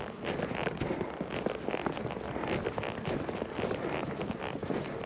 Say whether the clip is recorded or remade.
recorded